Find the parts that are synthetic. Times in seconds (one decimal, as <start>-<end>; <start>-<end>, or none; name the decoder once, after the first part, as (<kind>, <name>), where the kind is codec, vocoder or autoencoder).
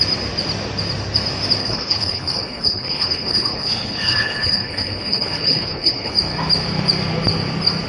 1.6-6.1 (codec, HILCodec)